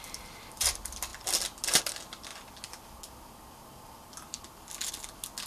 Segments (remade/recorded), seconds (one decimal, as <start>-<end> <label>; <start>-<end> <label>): 0.0-5.5 recorded